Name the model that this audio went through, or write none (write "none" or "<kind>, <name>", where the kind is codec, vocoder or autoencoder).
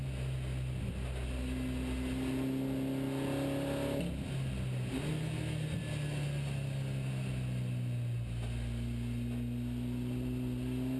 none